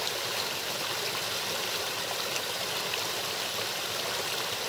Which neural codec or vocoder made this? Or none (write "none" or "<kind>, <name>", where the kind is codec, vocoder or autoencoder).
none